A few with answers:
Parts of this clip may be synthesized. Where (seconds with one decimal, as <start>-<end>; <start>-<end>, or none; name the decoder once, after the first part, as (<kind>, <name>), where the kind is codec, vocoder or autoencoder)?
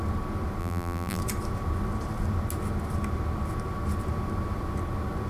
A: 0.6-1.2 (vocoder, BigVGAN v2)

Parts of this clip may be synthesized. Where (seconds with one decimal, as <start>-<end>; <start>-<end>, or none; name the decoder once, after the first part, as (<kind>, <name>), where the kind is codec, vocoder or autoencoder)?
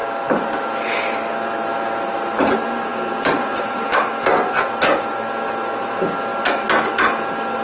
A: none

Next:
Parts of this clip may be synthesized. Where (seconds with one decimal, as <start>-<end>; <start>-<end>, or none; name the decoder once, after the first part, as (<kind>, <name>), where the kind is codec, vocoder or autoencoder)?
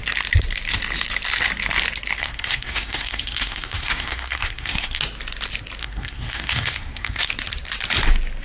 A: 2.2-5.0 (codec, SNAC); 5.8-7.3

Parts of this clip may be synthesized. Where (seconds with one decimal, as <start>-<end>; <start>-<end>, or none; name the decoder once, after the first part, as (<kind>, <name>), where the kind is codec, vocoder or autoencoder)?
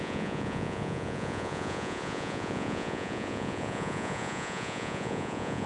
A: 0.0-5.7 (vocoder, Vocos)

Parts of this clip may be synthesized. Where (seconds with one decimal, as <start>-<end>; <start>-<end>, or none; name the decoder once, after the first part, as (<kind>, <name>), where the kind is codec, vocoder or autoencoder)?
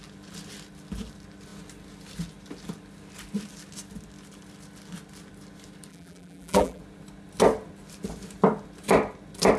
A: 5.9-6.8 (vocoder, BigVGAN v2)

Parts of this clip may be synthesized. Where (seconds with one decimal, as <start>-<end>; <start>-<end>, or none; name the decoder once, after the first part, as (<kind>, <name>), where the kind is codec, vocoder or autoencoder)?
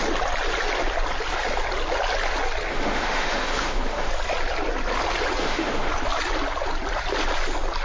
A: 2.7-4.1 (autoencoder, DAC-VAE); 5.4-5.9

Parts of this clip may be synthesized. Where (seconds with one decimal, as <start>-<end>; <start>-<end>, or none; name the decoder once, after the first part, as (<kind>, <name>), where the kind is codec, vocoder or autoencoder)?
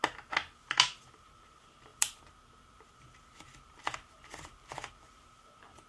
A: 1.9-4.9 (vocoder, BigVGAN v2)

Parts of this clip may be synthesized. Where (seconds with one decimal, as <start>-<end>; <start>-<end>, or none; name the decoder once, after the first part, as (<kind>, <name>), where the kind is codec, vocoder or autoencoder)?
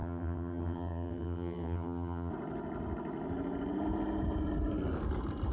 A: 0.0-2.3 (vocoder, HiFi-GAN)